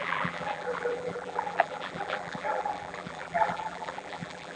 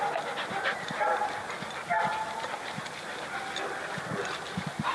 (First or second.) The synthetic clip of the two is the first